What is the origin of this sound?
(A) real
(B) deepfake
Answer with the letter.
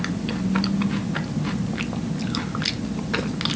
A